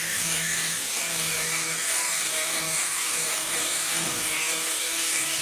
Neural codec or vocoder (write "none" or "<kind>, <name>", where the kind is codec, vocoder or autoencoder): codec, DAC